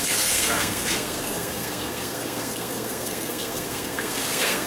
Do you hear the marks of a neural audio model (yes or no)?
yes